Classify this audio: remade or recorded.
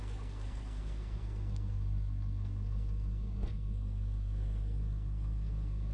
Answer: remade